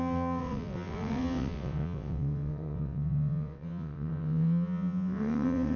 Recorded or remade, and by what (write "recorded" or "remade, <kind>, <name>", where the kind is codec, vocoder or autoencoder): remade, vocoder, WaveNeXt